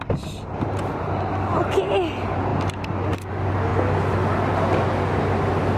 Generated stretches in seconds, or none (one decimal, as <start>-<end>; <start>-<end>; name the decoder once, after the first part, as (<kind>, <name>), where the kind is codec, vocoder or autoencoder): none